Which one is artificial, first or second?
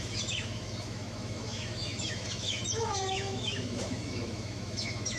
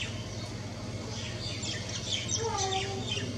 first